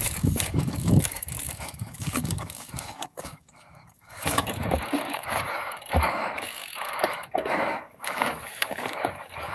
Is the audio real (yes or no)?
no